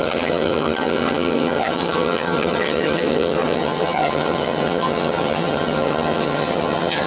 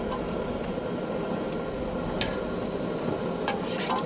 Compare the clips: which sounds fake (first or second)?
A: first